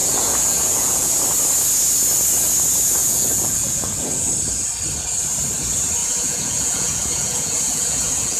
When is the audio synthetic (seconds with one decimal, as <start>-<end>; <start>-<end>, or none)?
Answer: 0.0-1.1; 3.0-4.3; 6.0-8.4